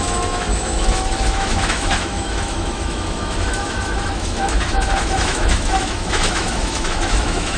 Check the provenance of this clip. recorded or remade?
remade